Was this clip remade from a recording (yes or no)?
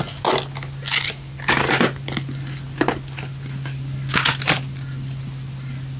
no